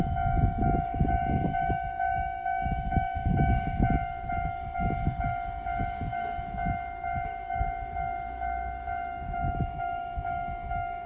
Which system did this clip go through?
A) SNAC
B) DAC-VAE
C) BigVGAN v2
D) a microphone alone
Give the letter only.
B